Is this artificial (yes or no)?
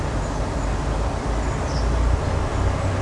no